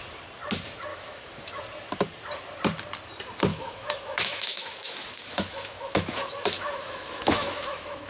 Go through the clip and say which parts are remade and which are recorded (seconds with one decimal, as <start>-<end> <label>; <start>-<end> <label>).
0.0-0.9 recorded; 0.9-1.6 remade; 1.6-3.5 recorded; 3.5-8.1 remade